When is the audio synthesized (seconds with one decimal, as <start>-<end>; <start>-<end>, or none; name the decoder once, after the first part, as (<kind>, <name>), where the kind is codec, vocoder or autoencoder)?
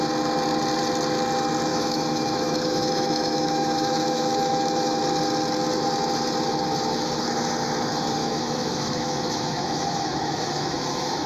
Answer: 1.7-5.0 (autoencoder, DAC-VAE); 8.2-11.3